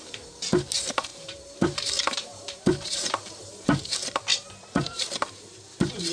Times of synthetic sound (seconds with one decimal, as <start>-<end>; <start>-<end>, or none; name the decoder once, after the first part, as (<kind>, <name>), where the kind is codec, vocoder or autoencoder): 0.0-6.1 (vocoder, BigVGAN v2)